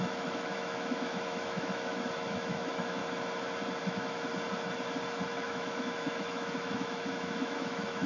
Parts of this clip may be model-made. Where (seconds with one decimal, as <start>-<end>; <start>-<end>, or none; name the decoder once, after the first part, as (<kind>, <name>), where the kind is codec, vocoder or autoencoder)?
0.0-3.0 (autoencoder, DAC-VAE); 3.8-4.3; 5.3-8.1